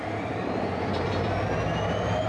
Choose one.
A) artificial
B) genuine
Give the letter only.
B